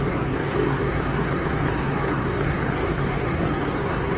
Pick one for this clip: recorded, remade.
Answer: remade